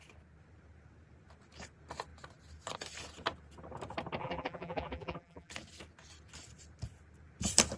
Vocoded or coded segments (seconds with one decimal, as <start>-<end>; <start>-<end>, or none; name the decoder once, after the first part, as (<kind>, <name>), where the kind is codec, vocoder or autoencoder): 4.2-5.5 (vocoder, BigVGAN v2)